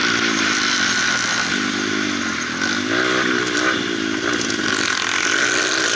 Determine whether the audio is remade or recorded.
recorded